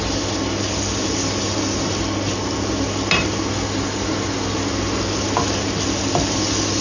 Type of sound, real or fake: real